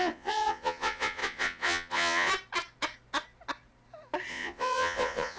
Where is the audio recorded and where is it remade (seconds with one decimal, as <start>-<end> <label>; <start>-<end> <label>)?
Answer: 0.0-2.3 remade; 2.3-4.3 recorded; 4.3-5.4 remade